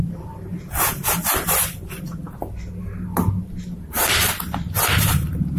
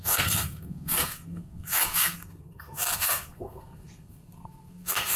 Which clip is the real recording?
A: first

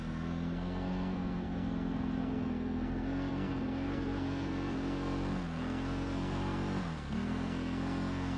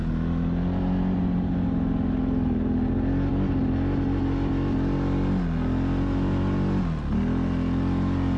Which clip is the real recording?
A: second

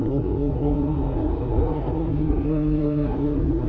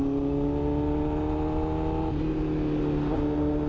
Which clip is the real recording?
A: second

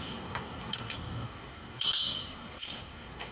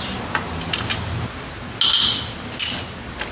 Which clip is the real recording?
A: second